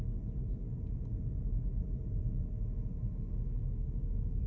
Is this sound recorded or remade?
recorded